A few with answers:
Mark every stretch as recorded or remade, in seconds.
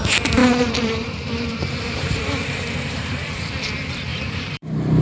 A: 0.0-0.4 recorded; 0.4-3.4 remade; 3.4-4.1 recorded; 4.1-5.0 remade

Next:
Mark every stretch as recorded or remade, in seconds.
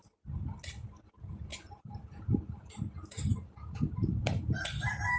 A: 0.0-1.5 recorded; 1.5-4.6 remade; 4.6-5.2 recorded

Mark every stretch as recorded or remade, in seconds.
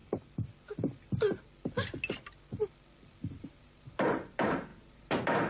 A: 0.0-3.3 recorded; 3.3-5.5 remade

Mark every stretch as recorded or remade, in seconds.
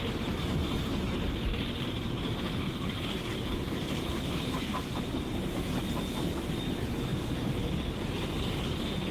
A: 0.0-1.5 recorded; 1.5-5.0 remade; 5.0-7.1 recorded; 7.1-7.7 remade; 7.7-9.1 recorded